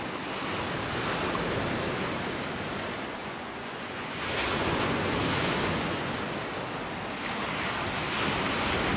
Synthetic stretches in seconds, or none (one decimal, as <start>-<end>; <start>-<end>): 3.2-6.2